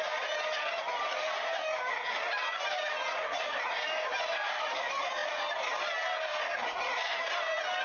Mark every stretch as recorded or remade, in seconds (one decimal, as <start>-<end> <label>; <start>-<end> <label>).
0.0-7.8 recorded